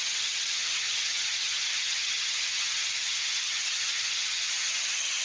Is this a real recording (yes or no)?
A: no